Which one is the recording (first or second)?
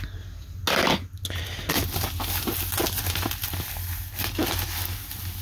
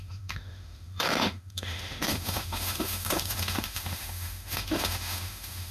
first